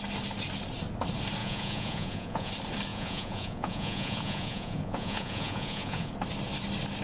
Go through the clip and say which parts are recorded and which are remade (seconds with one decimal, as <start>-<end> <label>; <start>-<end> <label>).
0.0-1.4 recorded; 1.4-2.5 remade; 2.5-2.9 recorded; 2.9-6.1 remade; 6.1-7.0 recorded